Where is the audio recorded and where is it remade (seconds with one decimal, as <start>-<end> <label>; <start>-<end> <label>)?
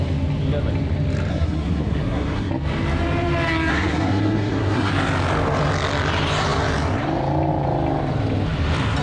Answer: 0.0-1.3 recorded; 1.3-2.5 remade; 2.5-3.7 recorded; 3.7-4.9 remade; 4.9-9.0 recorded